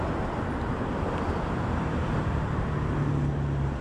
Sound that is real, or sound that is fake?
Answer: real